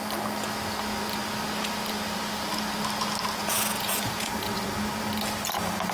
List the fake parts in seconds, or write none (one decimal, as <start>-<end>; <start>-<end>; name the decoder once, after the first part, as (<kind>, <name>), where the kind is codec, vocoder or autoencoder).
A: 3.4-4.5 (vocoder, Vocos)